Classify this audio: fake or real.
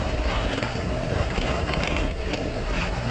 fake